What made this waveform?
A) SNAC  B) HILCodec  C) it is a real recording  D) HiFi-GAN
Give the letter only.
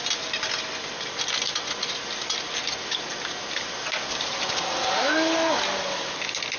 C